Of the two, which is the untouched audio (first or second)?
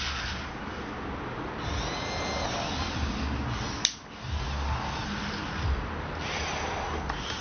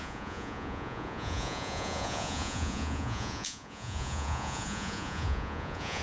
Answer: first